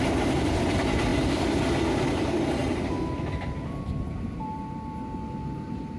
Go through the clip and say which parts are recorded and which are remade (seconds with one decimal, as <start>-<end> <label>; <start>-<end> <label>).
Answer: 0.0-6.0 recorded